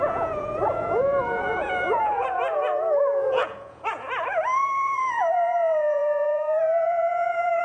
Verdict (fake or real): fake